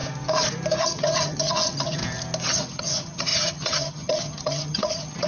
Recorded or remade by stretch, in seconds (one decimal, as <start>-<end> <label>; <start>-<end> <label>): 0.0-0.8 recorded; 0.8-2.0 remade; 2.0-2.5 recorded; 2.5-5.3 remade